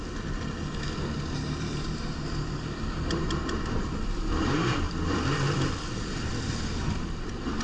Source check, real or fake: real